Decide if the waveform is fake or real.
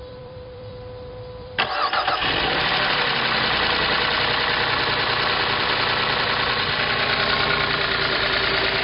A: fake